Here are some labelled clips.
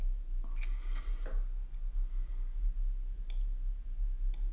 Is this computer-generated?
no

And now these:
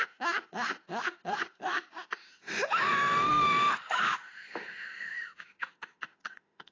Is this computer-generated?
yes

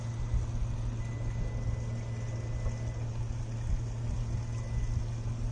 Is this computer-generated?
no